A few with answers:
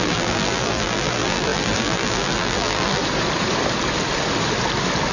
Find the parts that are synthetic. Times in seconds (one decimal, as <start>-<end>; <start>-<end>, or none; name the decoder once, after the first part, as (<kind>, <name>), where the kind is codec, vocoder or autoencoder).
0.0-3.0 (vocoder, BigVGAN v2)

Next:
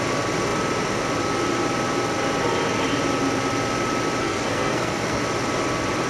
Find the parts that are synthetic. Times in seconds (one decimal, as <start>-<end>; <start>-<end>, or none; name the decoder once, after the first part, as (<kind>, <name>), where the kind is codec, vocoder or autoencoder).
4.2-5.2 (codec, SNAC)

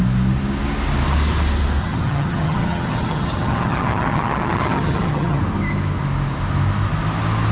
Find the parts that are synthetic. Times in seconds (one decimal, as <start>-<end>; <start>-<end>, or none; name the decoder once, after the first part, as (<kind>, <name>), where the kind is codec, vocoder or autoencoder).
1.8-5.4 (vocoder, HiFi-GAN)